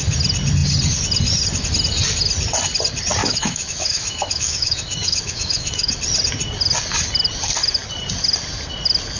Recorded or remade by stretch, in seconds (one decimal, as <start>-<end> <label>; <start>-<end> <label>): 0.0-3.2 recorded; 3.2-6.0 remade; 6.0-9.2 recorded